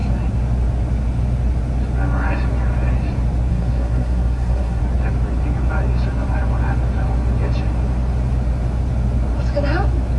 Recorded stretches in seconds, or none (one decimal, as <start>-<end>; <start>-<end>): 0.0-3.5; 4.8-10.2